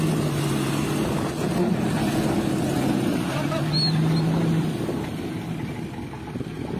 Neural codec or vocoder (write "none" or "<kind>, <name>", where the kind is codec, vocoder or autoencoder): none